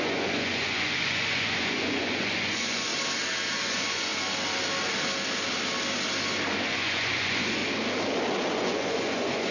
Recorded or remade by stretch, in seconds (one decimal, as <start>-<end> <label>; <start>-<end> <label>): 0.0-2.9 remade; 2.9-3.5 recorded; 3.5-4.1 remade; 4.1-6.5 recorded; 6.5-7.6 remade; 7.6-8.5 recorded; 8.5-9.5 remade